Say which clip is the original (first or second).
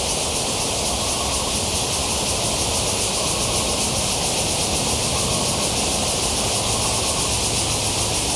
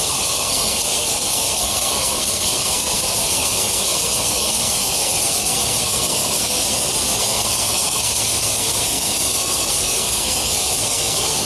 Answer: first